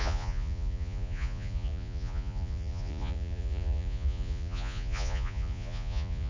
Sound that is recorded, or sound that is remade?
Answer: remade